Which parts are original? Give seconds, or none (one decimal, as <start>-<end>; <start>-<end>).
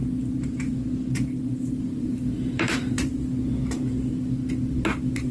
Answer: 0.0-2.0; 3.1-5.3